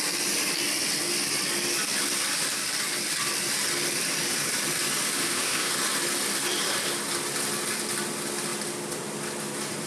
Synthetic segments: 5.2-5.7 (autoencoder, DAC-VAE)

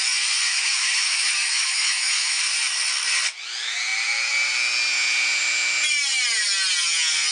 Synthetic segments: 0.5-2.4 (autoencoder, DAC-VAE)

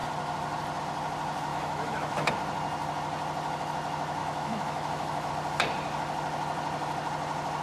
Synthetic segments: 1.5-2.3 (autoencoder, DAC-VAE); 4.2-5.3